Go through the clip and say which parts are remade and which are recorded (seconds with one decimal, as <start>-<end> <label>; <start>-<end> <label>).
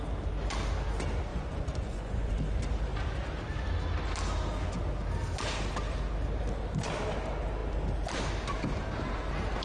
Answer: 0.0-1.3 recorded; 1.3-2.4 remade; 2.4-9.6 recorded